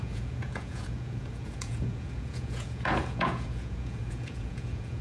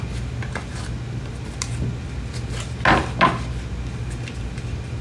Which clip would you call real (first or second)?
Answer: second